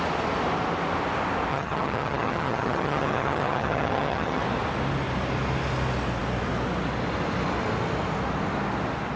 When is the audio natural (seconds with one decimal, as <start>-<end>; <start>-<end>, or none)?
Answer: 0.0-1.5; 4.4-9.2